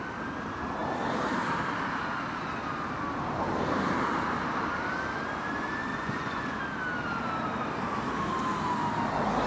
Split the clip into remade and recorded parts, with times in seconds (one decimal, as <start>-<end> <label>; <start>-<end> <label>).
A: 0.0-5.9 recorded; 5.9-6.6 remade; 6.6-9.5 recorded